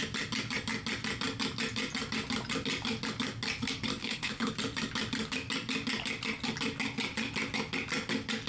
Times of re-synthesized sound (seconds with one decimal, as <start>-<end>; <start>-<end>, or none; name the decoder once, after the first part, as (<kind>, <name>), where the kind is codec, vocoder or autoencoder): 4.0-4.5 (codec, HILCodec)